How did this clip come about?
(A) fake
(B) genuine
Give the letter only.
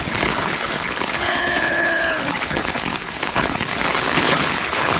A